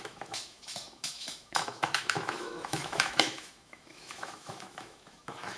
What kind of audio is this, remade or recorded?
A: remade